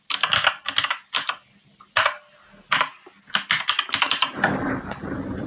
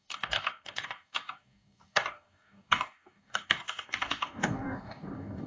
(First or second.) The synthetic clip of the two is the second